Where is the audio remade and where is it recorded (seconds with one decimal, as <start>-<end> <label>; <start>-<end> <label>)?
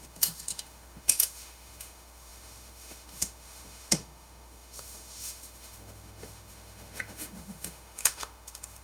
0.0-8.8 remade